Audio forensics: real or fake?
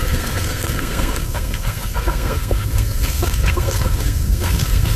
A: fake